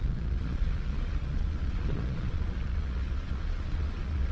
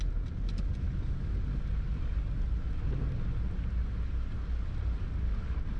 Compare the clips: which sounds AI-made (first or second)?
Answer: first